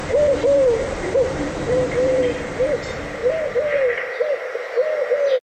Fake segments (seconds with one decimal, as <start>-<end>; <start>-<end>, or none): 0.0-2.8; 3.2-4.5